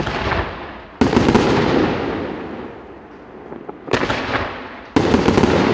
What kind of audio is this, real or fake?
real